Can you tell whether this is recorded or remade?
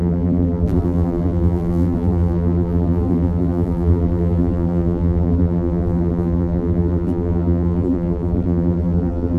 remade